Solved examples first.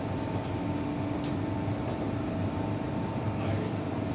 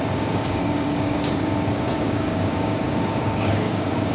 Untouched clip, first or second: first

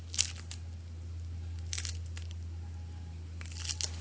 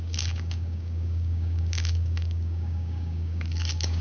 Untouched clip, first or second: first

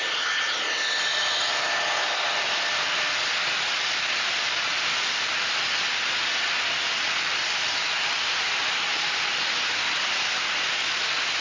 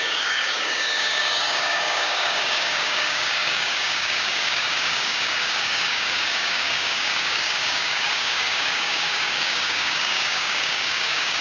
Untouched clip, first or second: first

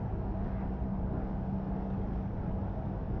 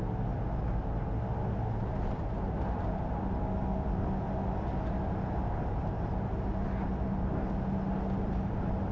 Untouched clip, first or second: second